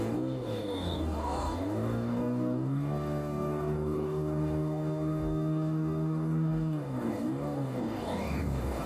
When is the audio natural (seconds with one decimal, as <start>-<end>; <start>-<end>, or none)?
none